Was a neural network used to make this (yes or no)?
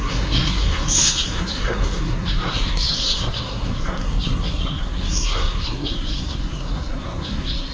yes